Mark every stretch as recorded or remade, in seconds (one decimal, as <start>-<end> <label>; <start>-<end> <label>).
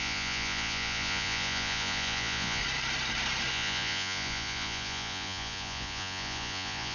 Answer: 0.0-2.6 remade; 2.6-3.5 recorded; 3.5-6.9 remade